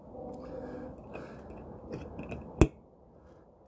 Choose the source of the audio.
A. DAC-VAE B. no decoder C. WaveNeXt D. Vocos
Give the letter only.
B